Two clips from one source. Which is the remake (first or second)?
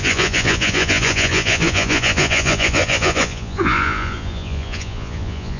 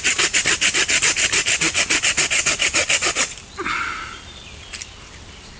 first